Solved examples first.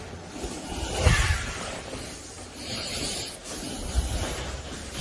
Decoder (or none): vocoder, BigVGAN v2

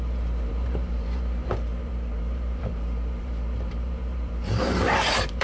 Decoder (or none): vocoder, BigVGAN v2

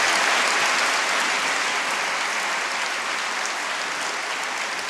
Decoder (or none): none